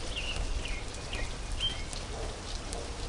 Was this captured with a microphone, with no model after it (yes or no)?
yes